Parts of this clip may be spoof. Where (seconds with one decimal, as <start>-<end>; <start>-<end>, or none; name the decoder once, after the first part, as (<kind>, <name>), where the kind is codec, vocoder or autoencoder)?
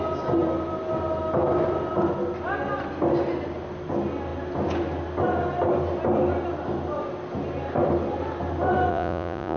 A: 8.9-9.6 (vocoder, Vocos)